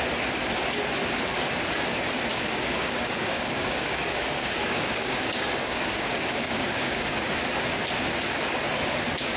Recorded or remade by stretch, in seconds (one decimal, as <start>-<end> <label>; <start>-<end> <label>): 0.0-2.3 recorded; 2.3-7.4 remade; 7.4-9.4 recorded